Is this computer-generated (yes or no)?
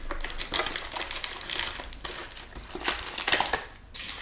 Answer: no